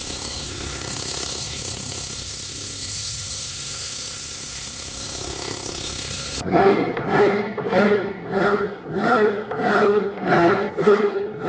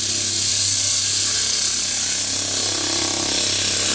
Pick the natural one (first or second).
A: second